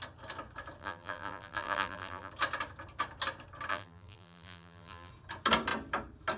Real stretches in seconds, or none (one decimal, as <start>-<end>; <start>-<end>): 0.0-0.8; 2.3-3.7; 5.1-6.4